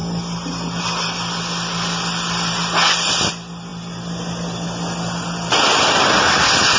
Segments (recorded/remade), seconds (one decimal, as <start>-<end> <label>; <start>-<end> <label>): 0.0-6.8 recorded

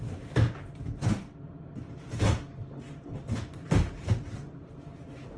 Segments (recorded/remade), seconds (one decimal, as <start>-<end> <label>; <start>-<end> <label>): 0.0-5.4 recorded

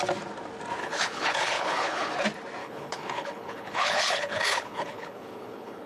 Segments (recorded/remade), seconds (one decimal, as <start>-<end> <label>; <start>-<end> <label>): 0.0-0.8 recorded; 0.8-2.1 remade; 2.1-2.6 recorded; 2.6-5.9 remade

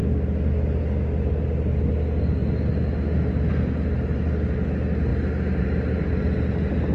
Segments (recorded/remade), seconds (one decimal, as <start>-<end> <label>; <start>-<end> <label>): 0.0-6.9 recorded

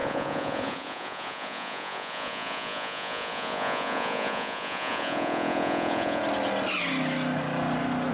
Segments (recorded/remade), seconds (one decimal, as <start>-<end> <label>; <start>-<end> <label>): 0.0-6.2 remade; 6.2-8.1 recorded

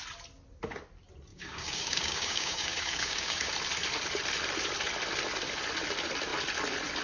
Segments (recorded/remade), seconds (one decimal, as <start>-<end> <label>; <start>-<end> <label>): 0.0-1.3 recorded; 1.3-3.5 remade; 3.5-7.0 recorded

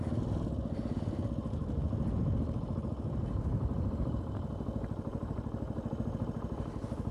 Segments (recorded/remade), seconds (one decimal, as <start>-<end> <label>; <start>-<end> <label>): 0.0-3.2 recorded; 3.2-7.1 remade